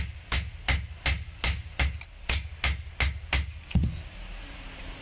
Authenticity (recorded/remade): recorded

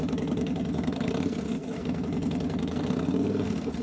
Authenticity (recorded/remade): remade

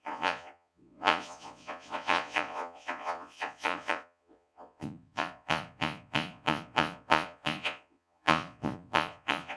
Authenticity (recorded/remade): remade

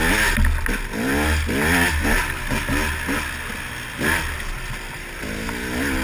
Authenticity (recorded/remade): recorded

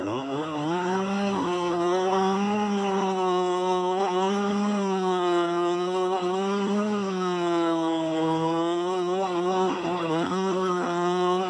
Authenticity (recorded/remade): remade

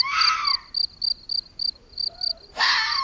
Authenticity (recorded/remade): recorded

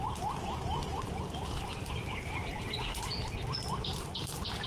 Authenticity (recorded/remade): recorded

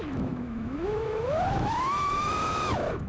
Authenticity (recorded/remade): remade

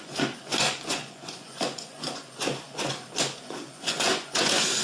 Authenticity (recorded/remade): remade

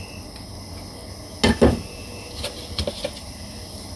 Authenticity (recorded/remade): recorded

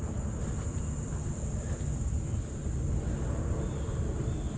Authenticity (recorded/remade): recorded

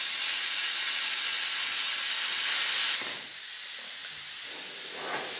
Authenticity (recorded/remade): recorded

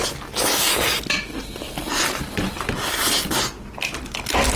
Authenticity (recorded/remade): recorded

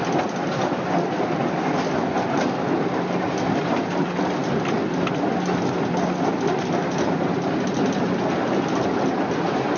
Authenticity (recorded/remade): recorded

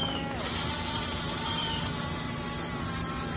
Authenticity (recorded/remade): recorded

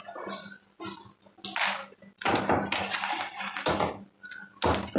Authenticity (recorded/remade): recorded